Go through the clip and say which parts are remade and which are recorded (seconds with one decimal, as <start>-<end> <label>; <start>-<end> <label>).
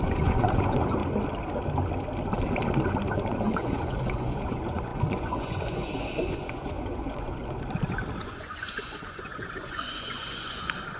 0.0-1.0 remade; 1.0-3.1 recorded; 3.1-7.4 remade; 7.4-8.2 recorded; 8.2-11.0 remade